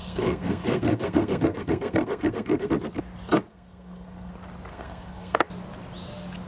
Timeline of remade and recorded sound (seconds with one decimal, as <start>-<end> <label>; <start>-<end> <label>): 0.0-2.7 remade; 2.7-3.5 recorded; 3.5-4.3 remade; 4.3-4.7 recorded; 4.7-5.5 remade; 5.5-6.5 recorded